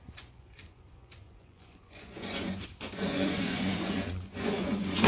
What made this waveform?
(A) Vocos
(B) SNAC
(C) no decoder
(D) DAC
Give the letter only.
A